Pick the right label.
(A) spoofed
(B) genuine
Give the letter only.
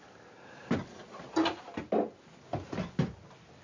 B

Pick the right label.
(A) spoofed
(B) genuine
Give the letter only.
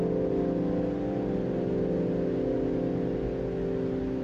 B